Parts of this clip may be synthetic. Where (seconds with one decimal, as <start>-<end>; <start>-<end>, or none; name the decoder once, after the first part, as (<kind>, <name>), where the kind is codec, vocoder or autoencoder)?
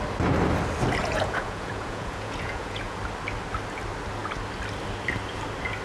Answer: 1.0-3.0 (vocoder, Vocos)